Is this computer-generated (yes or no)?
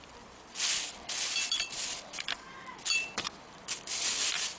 yes